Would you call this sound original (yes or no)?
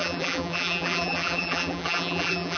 no